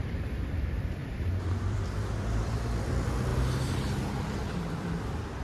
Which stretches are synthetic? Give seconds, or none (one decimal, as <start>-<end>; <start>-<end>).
0.0-3.3; 4.5-5.4